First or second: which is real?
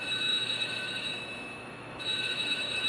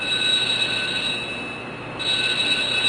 second